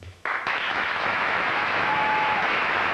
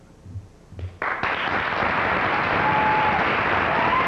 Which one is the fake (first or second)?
first